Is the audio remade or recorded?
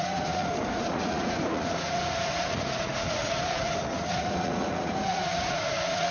remade